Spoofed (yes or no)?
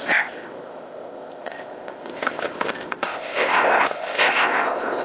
yes